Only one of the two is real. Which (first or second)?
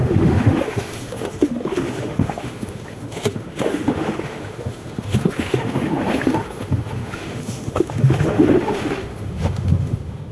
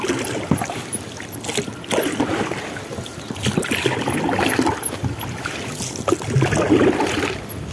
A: second